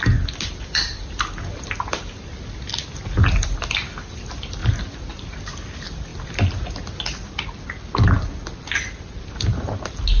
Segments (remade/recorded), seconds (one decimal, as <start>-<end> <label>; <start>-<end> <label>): 0.0-10.2 recorded

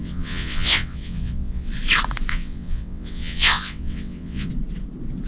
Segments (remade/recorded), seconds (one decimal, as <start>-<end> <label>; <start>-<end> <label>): 0.0-1.7 remade; 1.7-2.3 recorded; 2.3-4.5 remade; 4.5-5.3 recorded

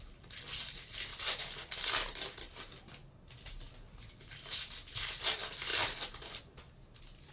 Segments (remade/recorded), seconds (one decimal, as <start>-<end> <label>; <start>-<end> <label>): 0.0-5.7 recorded; 5.7-6.4 remade; 6.4-7.3 recorded

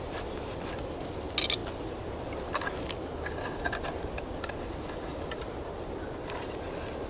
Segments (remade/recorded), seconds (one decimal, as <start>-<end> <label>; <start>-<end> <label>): 0.0-1.6 recorded; 1.6-2.3 remade; 2.3-5.1 recorded; 5.1-7.1 remade